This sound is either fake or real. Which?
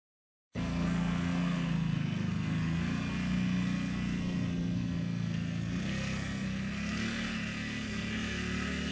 fake